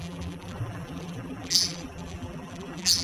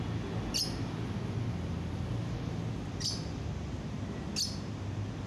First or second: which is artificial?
first